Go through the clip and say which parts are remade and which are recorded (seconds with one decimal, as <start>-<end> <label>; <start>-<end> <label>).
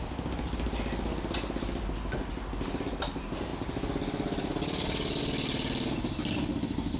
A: 0.0-7.0 recorded